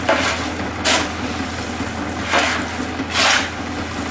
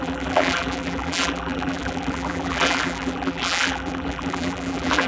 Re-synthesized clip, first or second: second